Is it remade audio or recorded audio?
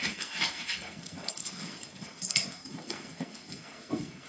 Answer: remade